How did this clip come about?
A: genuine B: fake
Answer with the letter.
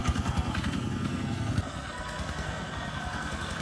B